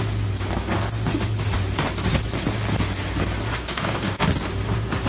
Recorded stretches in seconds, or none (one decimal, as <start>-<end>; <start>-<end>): 0.0-3.6; 4.2-5.1